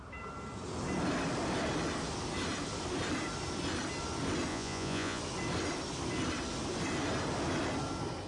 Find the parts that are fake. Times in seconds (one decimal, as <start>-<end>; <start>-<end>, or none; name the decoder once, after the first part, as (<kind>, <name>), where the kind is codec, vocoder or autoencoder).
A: 4.5-5.2 (vocoder, Vocos)